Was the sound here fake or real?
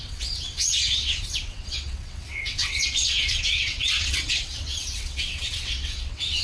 fake